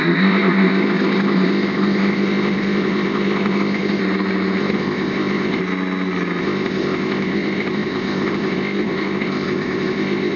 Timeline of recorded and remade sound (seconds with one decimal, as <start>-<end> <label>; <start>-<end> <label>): 0.0-4.0 remade; 4.0-4.6 recorded; 4.6-5.6 remade; 5.6-6.4 recorded; 6.4-10.4 remade